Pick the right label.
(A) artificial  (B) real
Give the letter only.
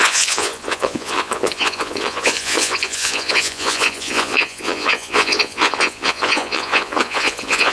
A